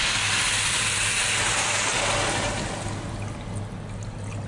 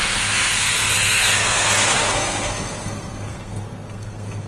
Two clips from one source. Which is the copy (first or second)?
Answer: second